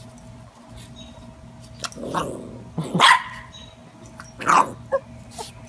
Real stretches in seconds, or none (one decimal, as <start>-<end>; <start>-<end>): 0.0-5.7